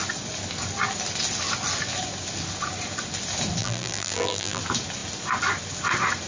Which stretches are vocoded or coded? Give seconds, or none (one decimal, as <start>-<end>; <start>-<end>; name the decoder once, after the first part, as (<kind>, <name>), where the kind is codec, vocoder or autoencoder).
3.6-4.6 (vocoder, BigVGAN v2)